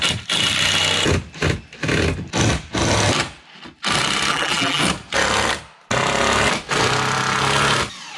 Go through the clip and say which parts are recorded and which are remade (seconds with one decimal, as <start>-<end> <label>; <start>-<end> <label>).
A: 0.0-4.3 recorded; 4.3-4.8 remade; 4.8-8.2 recorded

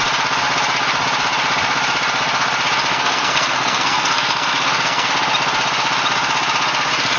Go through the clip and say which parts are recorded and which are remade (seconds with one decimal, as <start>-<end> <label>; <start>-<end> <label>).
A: 0.0-2.9 recorded; 2.9-5.1 remade; 5.1-7.2 recorded

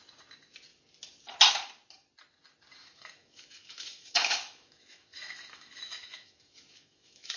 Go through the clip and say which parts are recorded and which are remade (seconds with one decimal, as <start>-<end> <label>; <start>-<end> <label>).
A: 0.0-2.8 recorded; 2.8-7.4 remade

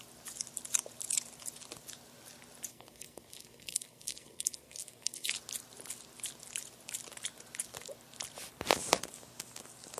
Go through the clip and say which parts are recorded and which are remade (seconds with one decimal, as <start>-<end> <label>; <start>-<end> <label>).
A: 0.0-2.7 recorded; 2.7-5.3 remade; 5.3-10.0 recorded